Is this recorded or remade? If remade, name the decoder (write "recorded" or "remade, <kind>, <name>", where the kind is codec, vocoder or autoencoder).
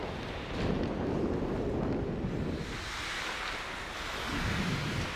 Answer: recorded